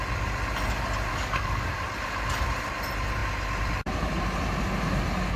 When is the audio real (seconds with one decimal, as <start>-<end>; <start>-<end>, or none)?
0.0-1.1; 1.7-5.4